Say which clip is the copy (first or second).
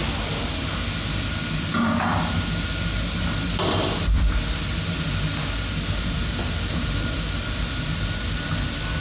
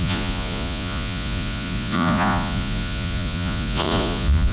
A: second